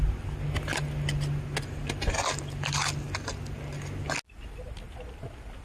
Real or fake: real